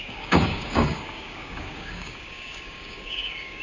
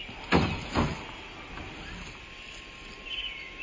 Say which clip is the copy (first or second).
first